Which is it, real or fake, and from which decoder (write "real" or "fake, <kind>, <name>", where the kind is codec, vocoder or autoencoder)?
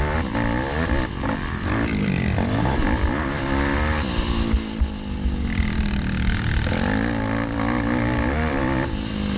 real